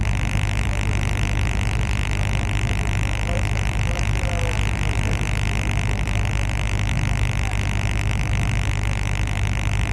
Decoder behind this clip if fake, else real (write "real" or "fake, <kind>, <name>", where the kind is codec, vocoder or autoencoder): fake, vocoder, BigVGAN v2